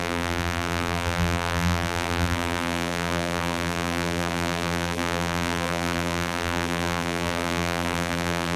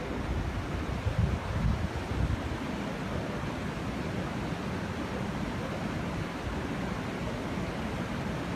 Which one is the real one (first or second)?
second